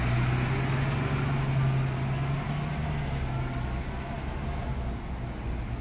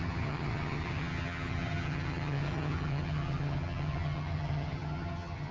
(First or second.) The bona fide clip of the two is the first